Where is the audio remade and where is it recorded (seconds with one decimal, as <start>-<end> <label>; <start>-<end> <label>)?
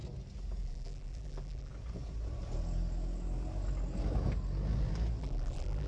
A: 0.0-0.6 recorded; 0.6-1.7 remade; 1.7-5.2 recorded; 5.2-5.9 remade